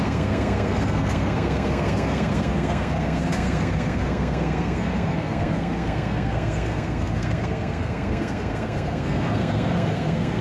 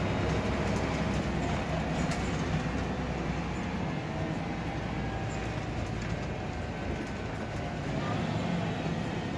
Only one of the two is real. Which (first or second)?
second